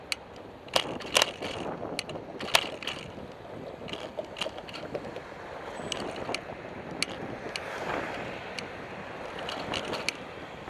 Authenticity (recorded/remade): recorded